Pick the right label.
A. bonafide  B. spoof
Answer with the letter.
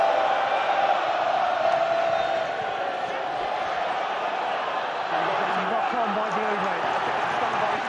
A